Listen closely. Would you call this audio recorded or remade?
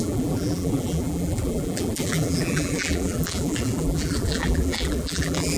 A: remade